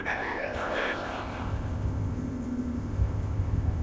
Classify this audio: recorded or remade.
remade